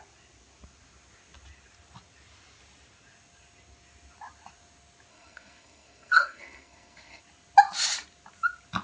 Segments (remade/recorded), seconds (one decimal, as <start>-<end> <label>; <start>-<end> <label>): 0.0-5.1 recorded; 5.1-7.2 remade; 7.2-8.8 recorded